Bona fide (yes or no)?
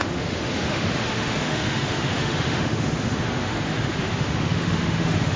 no